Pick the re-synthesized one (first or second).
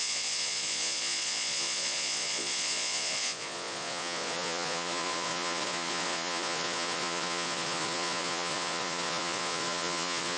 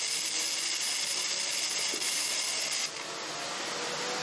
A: first